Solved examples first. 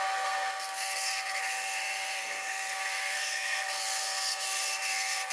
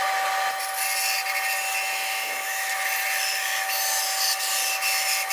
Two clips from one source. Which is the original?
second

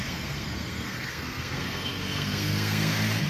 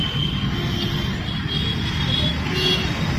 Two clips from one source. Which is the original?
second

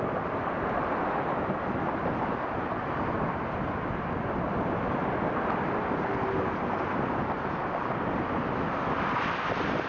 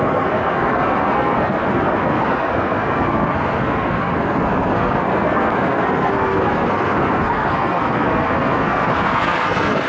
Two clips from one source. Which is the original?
first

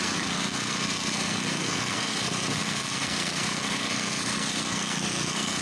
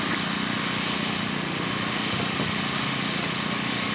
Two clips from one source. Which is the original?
second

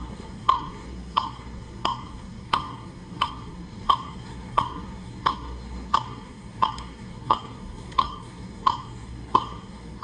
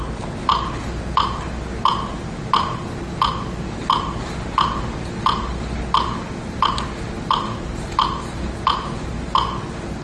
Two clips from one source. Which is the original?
second